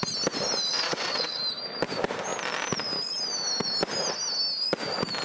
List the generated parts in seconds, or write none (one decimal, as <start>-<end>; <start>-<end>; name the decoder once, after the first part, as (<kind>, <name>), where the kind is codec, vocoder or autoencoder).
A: 0.7-1.4 (vocoder, WaveNeXt)